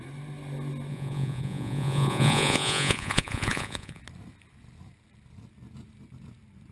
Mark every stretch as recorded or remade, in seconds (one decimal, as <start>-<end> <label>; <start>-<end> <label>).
0.0-0.9 recorded; 0.9-4.0 remade; 4.0-6.7 recorded